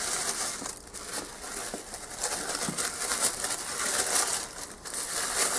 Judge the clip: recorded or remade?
recorded